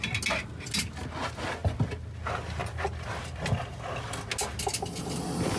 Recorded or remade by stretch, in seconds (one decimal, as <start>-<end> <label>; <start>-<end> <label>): 0.0-5.6 recorded